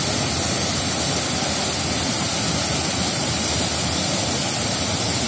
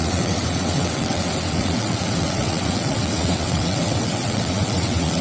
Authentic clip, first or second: first